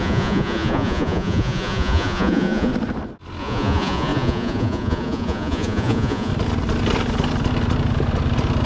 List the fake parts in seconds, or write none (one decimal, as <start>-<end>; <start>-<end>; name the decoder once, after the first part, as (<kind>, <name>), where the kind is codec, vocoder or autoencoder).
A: 0.0-2.7 (vocoder, Vocos); 3.4-6.3